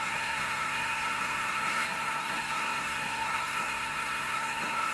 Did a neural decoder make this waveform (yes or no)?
yes